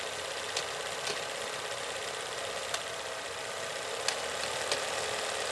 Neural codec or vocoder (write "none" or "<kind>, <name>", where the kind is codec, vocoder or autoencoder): none